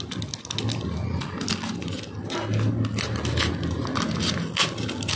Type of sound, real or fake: real